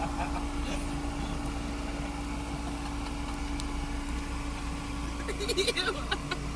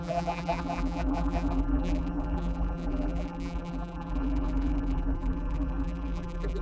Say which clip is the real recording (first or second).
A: first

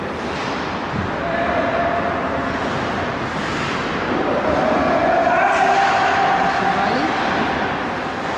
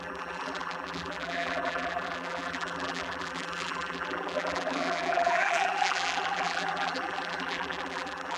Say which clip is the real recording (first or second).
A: first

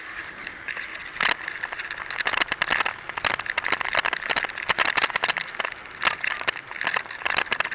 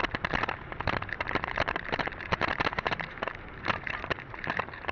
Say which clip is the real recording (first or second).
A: first